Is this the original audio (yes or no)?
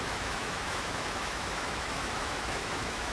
no